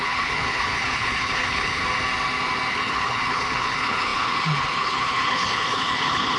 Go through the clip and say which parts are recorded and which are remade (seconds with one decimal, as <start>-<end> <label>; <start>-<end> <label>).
0.0-1.8 remade; 1.8-2.7 recorded; 2.7-6.4 remade